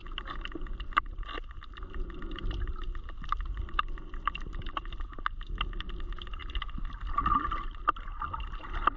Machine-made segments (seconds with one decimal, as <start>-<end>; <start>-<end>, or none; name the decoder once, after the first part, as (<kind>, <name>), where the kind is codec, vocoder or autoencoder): none